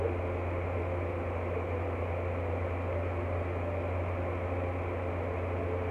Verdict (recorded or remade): recorded